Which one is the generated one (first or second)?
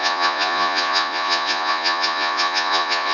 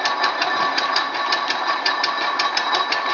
first